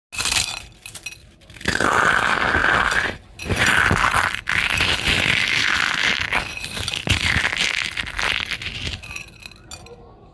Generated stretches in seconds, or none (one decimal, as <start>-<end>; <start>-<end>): none